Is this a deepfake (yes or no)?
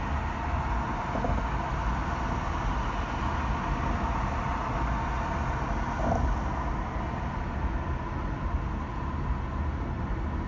no